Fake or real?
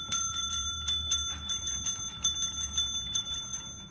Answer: fake